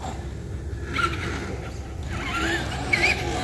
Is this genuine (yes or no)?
yes